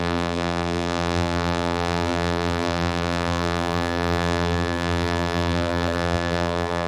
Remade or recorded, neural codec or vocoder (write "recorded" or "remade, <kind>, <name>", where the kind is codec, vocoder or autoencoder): remade, vocoder, BigVGAN v2